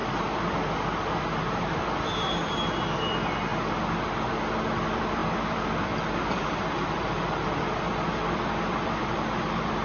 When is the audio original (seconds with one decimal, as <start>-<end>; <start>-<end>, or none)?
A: 0.0-1.6; 3.5-4.7